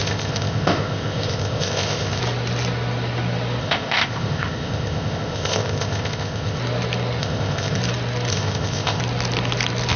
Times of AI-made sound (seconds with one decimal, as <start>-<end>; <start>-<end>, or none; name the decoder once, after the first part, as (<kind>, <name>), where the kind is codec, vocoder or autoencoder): 0.0-2.2 (codec, ZipCodec); 3.6-6.6; 7.2-7.8; 8.3-9.0